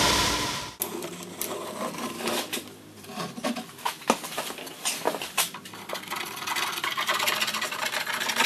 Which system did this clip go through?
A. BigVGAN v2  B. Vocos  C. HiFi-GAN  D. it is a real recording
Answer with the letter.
A